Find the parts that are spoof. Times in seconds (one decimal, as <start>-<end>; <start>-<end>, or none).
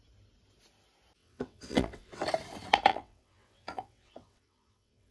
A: 1.2-2.2; 2.9-5.1